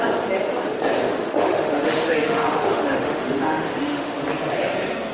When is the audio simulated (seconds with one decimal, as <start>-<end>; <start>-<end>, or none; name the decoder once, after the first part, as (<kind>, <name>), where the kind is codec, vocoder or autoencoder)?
1.1-4.2 (autoencoder, DAC-VAE)